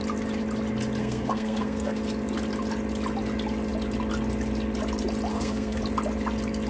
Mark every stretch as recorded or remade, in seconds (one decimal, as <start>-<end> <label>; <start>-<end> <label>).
0.0-1.0 recorded; 1.0-2.0 remade; 2.0-5.3 recorded; 5.3-5.8 remade; 5.8-6.7 recorded